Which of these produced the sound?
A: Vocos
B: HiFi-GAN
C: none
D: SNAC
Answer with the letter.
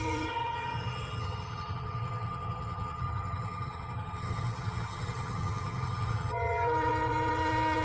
B